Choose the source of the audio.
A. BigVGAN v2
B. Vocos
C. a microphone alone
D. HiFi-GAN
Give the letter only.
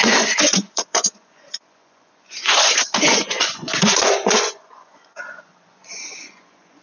B